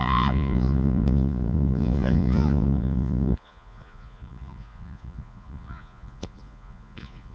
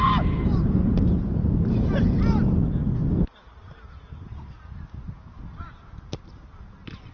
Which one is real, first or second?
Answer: second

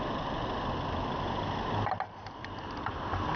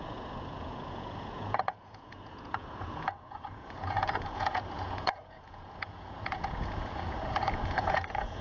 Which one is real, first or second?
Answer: first